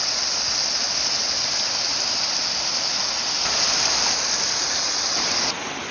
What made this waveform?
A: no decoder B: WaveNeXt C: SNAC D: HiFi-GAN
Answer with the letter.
A